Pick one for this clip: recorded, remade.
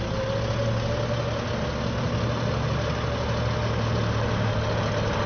recorded